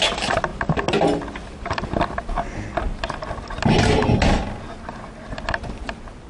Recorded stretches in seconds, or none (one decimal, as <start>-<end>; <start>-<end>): 0.0-6.3